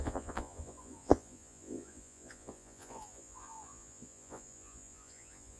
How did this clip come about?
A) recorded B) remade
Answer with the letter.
B